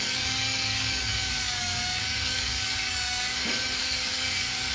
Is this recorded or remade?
remade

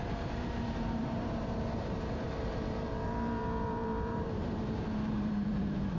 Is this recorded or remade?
remade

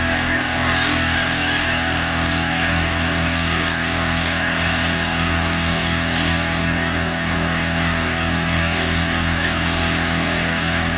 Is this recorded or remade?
remade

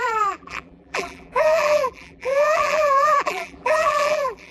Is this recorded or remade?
remade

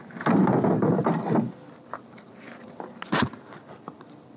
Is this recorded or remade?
recorded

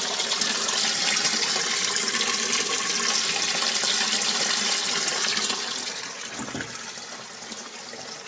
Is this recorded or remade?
recorded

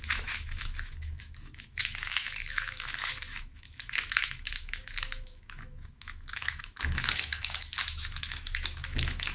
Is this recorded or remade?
remade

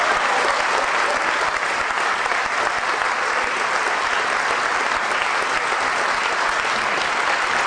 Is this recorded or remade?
recorded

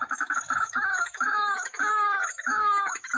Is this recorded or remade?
remade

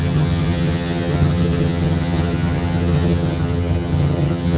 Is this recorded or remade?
remade